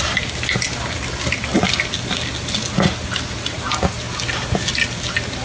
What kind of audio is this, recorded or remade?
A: recorded